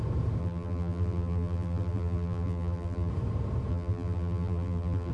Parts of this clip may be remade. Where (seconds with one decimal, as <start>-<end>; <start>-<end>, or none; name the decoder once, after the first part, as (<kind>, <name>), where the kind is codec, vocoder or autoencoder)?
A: 0.4-3.1 (vocoder, BigVGAN v2); 3.7-5.1